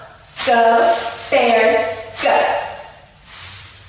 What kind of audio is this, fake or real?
real